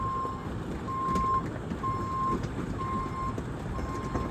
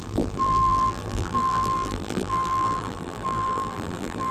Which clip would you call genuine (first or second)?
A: first